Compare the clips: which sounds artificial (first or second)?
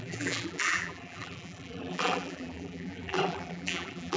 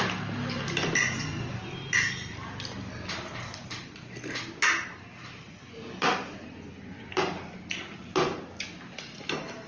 first